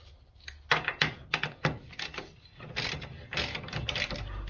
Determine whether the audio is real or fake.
real